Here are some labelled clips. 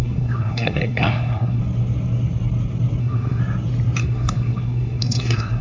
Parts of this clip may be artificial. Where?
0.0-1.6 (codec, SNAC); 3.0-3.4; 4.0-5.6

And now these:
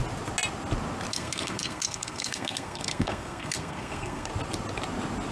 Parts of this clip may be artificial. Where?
1.1-4.3 (codec, SNAC)

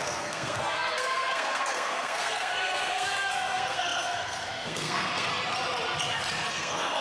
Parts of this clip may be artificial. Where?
0.0-5.3 (codec, SNAC); 6.5-7.0